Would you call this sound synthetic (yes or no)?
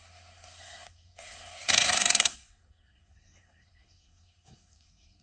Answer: yes